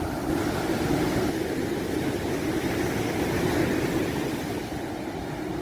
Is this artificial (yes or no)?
no